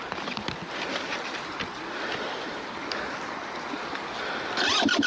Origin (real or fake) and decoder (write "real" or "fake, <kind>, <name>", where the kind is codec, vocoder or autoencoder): real